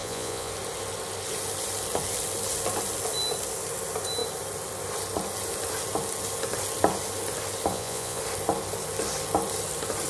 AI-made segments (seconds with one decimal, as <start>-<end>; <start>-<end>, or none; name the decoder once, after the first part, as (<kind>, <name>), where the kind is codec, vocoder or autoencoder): 0.0-0.5 (vocoder, Vocos); 7.7-8.2

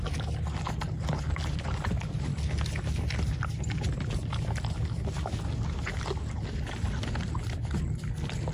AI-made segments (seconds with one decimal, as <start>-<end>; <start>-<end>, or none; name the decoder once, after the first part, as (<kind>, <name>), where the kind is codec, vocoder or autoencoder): none

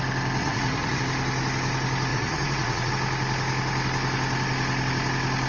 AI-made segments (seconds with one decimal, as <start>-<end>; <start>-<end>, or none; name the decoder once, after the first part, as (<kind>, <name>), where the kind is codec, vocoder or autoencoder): 0.4-1.0 (vocoder, Vocos); 2.1-2.9

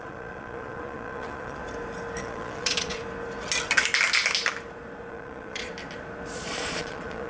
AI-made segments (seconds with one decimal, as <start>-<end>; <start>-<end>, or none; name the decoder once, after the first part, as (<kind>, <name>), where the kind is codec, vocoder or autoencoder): 0.0-1.6 (vocoder, Vocos); 2.2-3.0; 5.1-5.7; 6.3-7.3

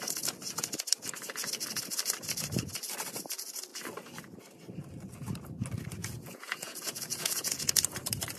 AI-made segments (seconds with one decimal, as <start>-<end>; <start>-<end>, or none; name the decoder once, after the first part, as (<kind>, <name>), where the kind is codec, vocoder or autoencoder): 6.0-7.7 (vocoder, Vocos)